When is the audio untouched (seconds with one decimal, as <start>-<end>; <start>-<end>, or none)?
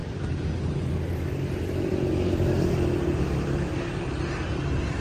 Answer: 0.0-5.0